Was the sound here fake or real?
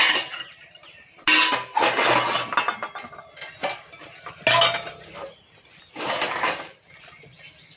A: real